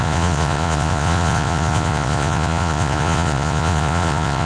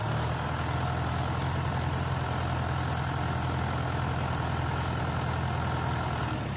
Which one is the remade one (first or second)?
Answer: first